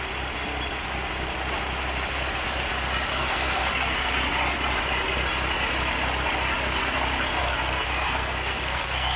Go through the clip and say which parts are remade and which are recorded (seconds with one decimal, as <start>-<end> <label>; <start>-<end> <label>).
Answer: 0.0-3.1 recorded; 3.1-4.1 remade; 4.1-7.4 recorded; 7.4-9.2 remade